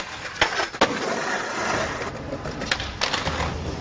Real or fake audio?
real